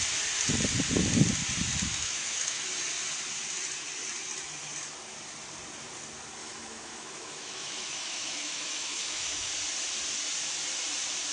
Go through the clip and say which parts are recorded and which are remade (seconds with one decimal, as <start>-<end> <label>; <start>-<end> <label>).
0.0-2.0 recorded; 2.0-2.6 remade; 2.6-6.4 recorded; 6.4-9.5 remade; 9.5-11.3 recorded